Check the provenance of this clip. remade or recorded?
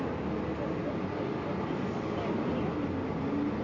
recorded